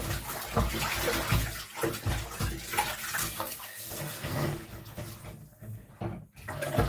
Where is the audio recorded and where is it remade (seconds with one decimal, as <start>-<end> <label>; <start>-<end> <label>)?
0.0-3.2 recorded; 3.2-5.0 remade; 5.0-5.4 recorded; 5.4-6.0 remade; 6.0-6.9 recorded